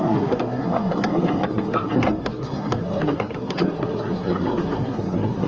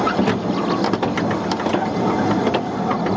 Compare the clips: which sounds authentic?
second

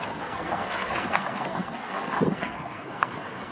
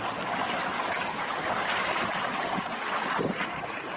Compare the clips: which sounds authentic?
second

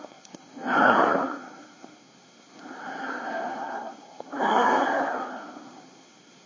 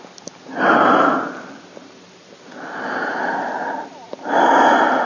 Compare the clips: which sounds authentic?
second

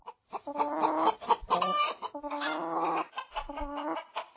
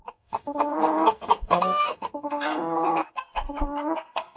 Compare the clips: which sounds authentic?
first